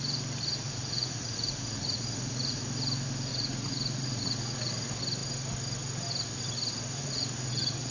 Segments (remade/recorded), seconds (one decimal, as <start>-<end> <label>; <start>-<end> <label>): 0.0-0.8 recorded; 0.8-2.6 remade; 2.6-3.3 recorded; 3.3-4.7 remade; 4.7-7.0 recorded; 7.0-7.9 remade